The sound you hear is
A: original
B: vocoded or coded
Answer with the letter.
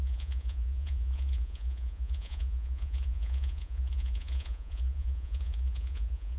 B